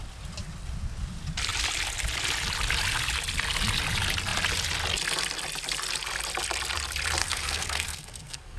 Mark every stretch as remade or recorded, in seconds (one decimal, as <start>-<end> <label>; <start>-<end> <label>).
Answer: 0.0-7.2 recorded; 7.2-8.6 remade